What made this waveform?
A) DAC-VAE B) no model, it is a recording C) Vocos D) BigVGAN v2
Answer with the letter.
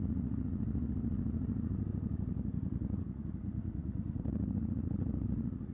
C